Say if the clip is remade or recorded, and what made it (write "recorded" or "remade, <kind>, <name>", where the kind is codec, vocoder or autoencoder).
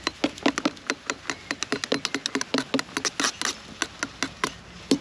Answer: recorded